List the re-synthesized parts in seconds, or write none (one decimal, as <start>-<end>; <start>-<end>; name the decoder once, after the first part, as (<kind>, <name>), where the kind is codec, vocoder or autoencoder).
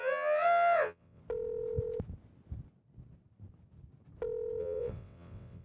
0.0-1.2 (vocoder, WaveNeXt); 4.6-5.6